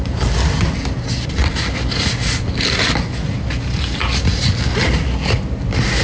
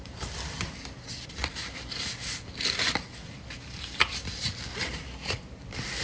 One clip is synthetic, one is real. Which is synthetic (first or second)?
second